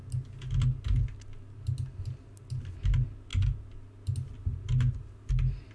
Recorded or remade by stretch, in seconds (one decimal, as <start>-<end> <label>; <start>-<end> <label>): 0.0-5.7 recorded